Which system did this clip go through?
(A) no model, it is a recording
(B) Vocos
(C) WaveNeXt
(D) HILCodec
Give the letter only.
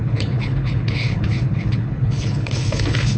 D